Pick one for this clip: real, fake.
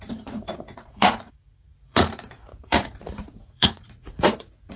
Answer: fake